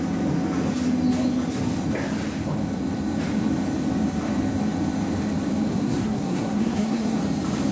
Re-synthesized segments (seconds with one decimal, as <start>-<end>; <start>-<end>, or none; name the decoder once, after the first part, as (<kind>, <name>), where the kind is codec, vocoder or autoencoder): 5.7-7.2 (codec, SNAC)